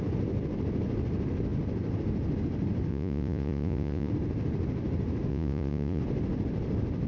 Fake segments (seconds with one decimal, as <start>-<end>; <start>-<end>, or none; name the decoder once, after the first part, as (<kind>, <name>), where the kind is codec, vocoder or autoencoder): 2.9-4.1 (vocoder, Vocos); 5.3-6.0